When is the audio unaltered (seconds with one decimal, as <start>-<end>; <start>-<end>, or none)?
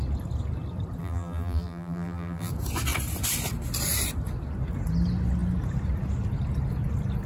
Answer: 0.0-1.0; 2.5-7.3